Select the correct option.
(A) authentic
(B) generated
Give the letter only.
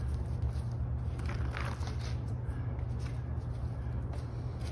A